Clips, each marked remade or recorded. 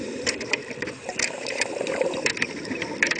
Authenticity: remade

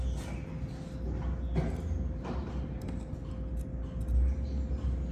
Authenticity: recorded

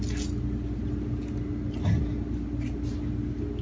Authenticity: recorded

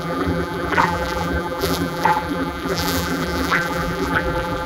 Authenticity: remade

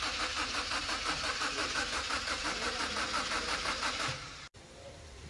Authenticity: remade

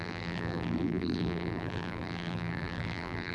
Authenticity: remade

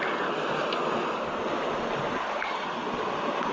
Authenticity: recorded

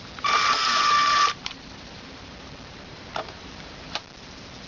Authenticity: remade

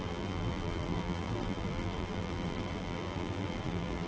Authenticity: remade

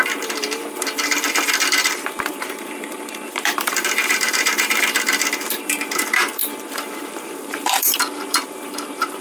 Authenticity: remade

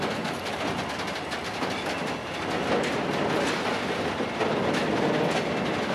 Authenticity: recorded